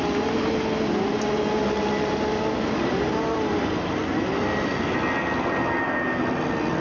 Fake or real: real